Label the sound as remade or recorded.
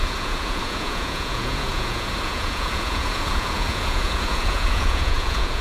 remade